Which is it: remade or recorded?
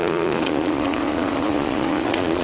remade